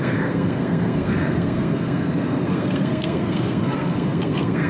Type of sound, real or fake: fake